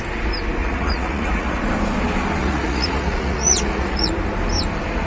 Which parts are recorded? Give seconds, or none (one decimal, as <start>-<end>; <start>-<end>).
0.0-0.6; 1.6-2.4; 4.1-5.1